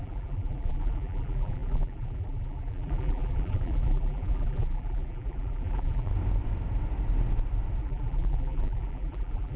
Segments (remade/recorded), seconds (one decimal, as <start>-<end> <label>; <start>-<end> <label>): 0.0-6.1 remade; 6.1-7.8 recorded; 7.8-9.6 remade